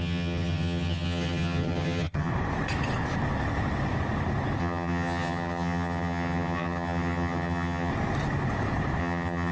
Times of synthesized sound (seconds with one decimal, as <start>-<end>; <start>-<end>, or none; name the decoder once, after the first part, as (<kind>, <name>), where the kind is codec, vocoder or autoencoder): 0.0-2.3 (vocoder, HiFi-GAN); 4.6-7.9; 9.0-9.5